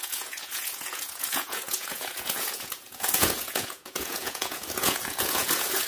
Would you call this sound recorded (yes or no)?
no